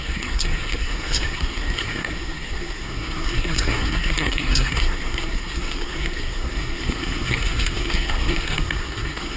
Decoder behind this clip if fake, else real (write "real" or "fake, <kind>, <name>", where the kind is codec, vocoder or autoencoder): fake, codec, SNAC